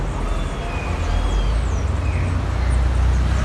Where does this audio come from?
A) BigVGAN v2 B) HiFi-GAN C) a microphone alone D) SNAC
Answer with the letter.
C